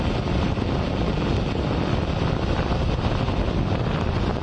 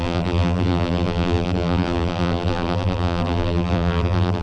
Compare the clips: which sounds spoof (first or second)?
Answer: second